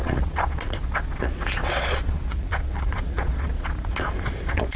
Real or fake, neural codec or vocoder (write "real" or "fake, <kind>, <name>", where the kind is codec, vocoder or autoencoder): fake, vocoder, Vocos